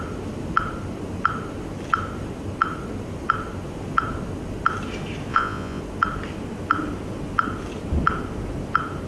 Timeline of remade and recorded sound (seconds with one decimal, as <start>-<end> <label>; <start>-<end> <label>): 0.0-5.3 recorded; 5.3-5.8 remade; 5.8-9.1 recorded